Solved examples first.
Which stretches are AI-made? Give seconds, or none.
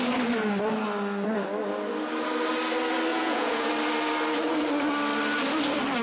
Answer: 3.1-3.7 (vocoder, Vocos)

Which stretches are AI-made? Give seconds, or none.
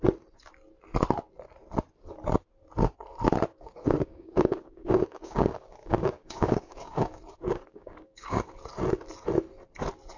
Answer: 3.5-8.4 (codec, DAC)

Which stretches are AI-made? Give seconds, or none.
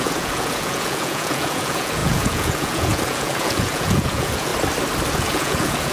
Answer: 0.0-4.5 (vocoder, Vocos); 5.1-5.9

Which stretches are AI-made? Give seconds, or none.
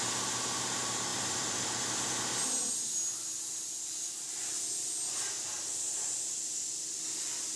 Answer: none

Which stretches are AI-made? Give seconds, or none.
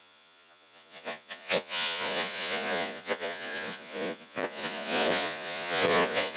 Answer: 0.0-6.4 (vocoder, Vocos)